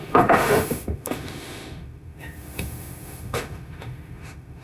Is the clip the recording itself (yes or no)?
no